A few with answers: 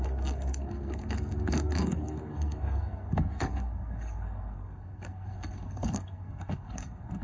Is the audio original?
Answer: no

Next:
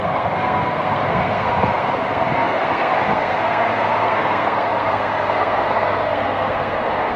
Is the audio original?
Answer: no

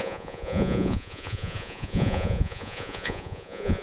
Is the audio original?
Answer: no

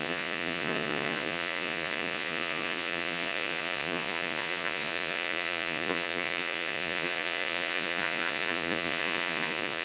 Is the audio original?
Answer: no